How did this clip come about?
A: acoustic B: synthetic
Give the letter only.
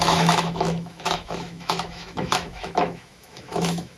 B